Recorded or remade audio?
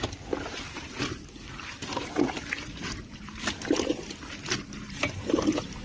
remade